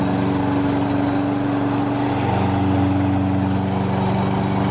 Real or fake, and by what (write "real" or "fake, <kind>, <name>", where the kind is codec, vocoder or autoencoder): real